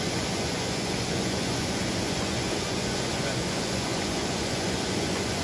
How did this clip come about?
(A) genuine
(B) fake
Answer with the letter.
B